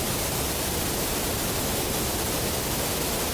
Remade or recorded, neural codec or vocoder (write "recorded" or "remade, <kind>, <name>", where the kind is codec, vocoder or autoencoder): recorded